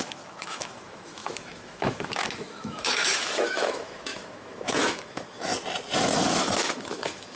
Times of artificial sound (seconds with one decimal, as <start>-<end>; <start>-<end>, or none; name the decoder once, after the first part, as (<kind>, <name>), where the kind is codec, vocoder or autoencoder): 0.0-5.5 (autoencoder, DAC-VAE); 6.3-7.4